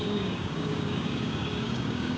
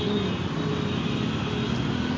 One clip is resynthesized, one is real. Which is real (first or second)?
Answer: second